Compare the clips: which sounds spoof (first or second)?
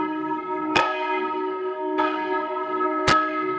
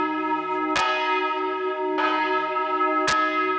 first